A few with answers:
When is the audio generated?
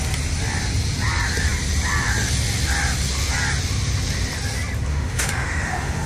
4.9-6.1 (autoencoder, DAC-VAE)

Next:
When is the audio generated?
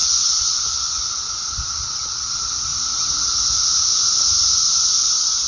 0.0-2.7 (vocoder, Vocos); 4.9-5.5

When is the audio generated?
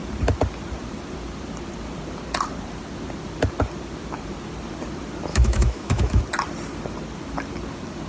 5.3-6.2 (autoencoder, DAC-VAE)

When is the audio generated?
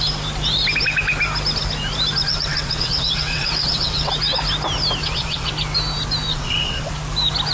2.3-4.1 (vocoder, WaveNeXt); 5.0-5.5; 6.3-6.9